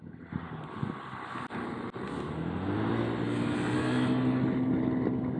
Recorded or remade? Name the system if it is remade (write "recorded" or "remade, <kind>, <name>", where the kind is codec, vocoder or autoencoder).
recorded